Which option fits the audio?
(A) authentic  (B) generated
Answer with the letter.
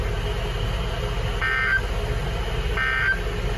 A